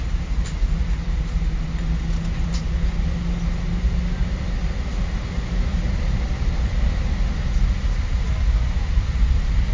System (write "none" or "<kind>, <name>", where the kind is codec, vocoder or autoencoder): none